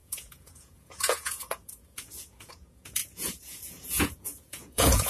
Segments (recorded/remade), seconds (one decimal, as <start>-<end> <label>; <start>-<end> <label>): 0.0-5.1 remade